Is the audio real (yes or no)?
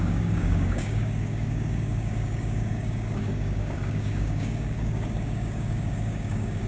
no